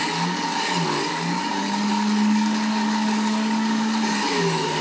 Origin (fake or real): fake